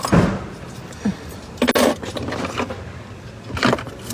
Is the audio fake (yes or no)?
no